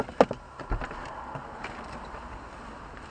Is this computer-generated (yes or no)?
no